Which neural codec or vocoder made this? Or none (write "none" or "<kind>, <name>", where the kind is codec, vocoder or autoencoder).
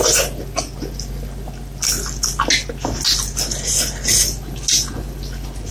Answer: none